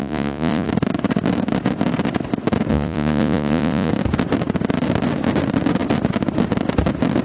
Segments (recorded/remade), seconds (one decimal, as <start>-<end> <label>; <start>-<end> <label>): 0.0-0.7 remade; 0.7-2.7 recorded; 2.7-3.9 remade; 3.9-7.2 recorded